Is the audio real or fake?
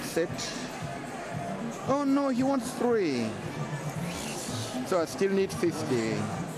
real